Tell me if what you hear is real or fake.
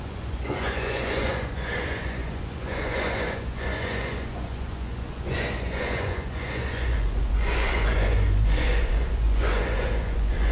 fake